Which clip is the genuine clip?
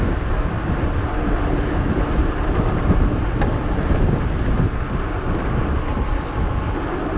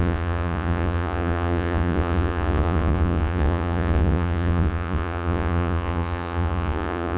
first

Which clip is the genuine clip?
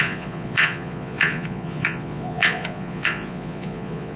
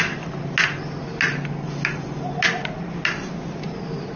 second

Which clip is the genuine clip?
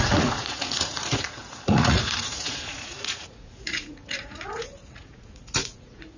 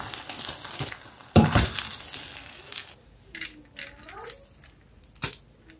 second